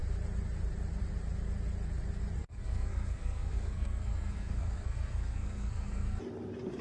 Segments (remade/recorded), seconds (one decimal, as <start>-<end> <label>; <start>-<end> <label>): 0.0-2.4 recorded; 2.4-6.2 remade; 6.2-6.8 recorded